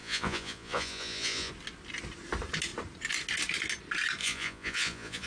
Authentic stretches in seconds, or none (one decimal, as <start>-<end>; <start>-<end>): 1.5-4.2